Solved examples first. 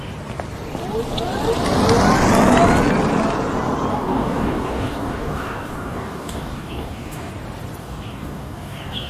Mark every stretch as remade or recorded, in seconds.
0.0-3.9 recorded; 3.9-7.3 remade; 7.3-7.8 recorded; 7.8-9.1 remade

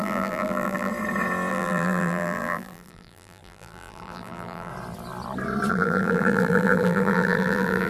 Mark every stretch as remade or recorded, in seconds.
0.0-0.9 remade; 0.9-1.5 recorded; 1.5-4.7 remade; 4.7-5.7 recorded; 5.7-7.9 remade

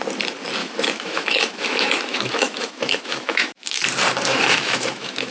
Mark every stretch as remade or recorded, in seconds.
0.0-0.6 recorded; 0.6-3.8 remade; 3.8-4.3 recorded; 4.3-5.3 remade

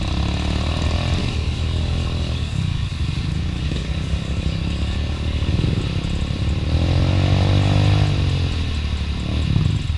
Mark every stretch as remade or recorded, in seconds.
0.0-1.2 recorded; 1.2-5.8 remade; 5.8-10.0 recorded

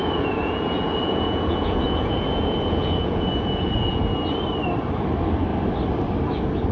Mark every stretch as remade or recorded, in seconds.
0.0-4.0 remade; 4.0-6.7 recorded

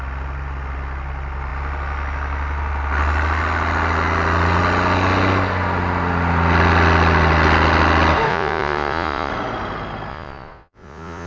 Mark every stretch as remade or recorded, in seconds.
0.0-8.3 recorded; 8.3-9.3 remade; 9.3-10.1 recorded; 10.1-11.3 remade